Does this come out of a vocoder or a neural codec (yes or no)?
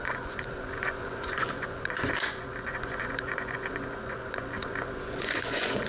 yes